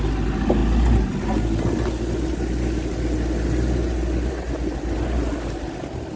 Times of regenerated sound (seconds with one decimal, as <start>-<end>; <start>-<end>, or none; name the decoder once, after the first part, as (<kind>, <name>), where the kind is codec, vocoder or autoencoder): none